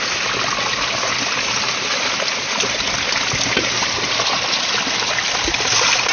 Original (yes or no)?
yes